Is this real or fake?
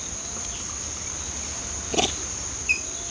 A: real